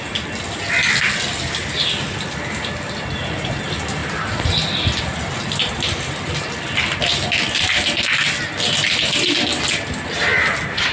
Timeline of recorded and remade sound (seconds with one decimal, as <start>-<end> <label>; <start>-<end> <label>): 0.0-10.9 recorded